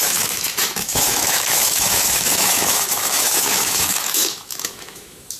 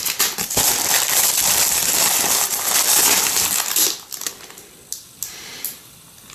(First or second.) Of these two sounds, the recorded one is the second